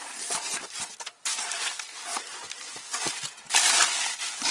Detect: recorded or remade recorded